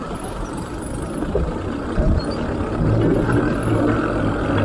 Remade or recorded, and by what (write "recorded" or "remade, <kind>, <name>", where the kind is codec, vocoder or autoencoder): recorded